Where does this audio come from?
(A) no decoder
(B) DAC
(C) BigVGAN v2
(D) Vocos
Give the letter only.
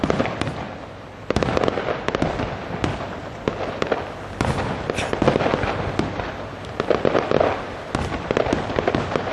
A